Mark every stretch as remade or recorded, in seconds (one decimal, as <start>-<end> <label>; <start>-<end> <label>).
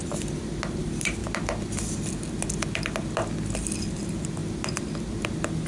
0.0-5.7 recorded